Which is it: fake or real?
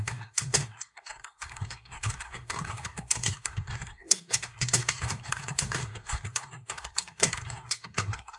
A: fake